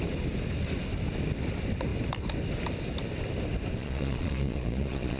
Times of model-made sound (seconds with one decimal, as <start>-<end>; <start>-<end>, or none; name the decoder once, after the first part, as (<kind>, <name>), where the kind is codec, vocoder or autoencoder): 3.8-5.2 (vocoder, Vocos)